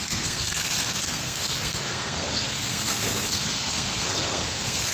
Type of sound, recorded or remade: remade